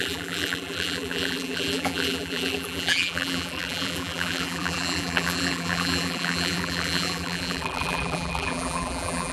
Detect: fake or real fake